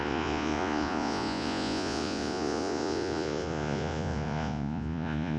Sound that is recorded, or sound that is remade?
remade